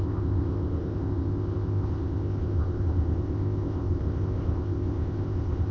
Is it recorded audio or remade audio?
remade